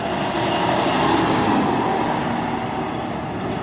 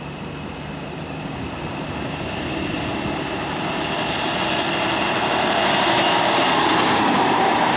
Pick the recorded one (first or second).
first